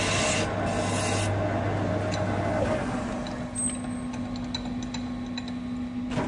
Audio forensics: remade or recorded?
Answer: recorded